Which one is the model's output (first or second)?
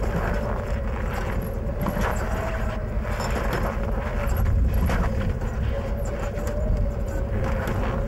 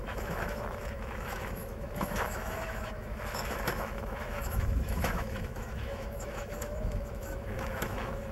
second